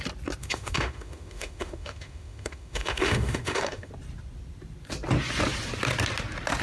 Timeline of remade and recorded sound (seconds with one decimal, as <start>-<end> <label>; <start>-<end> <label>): 0.0-0.4 recorded; 0.4-3.9 remade; 3.9-6.6 recorded